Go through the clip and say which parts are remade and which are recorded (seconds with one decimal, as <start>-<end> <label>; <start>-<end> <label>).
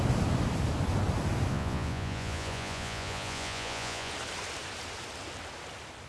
0.0-1.5 recorded; 1.5-4.1 remade; 4.1-6.1 recorded